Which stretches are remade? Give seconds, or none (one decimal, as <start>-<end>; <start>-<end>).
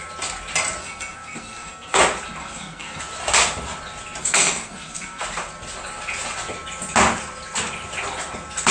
0.8-2.0; 2.4-3.0; 4.2-5.2